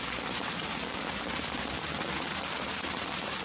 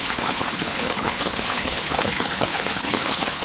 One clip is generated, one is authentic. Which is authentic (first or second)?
first